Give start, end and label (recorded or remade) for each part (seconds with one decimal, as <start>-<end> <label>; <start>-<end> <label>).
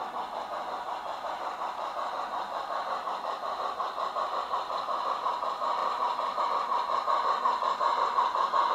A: 0.0-5.8 recorded; 5.8-6.4 remade; 6.4-8.7 recorded